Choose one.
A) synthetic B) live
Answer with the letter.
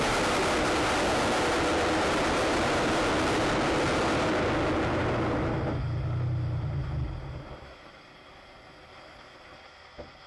B